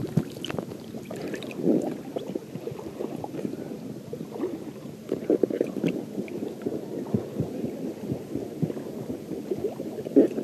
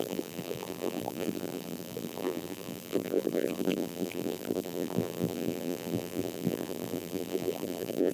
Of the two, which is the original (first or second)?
first